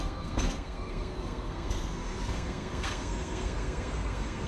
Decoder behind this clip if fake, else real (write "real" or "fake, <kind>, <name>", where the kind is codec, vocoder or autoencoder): fake, codec, SNAC